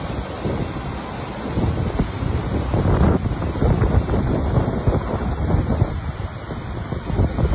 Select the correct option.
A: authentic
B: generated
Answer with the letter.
A